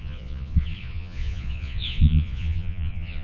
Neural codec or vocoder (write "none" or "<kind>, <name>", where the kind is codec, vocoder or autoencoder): vocoder, Vocos